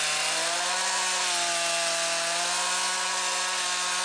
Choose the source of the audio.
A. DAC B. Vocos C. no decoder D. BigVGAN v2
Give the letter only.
C